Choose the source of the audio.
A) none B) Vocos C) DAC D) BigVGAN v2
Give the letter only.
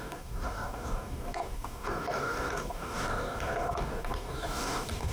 C